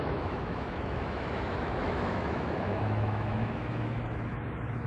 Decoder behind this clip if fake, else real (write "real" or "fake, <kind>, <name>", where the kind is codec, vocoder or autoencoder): fake, autoencoder, DAC-VAE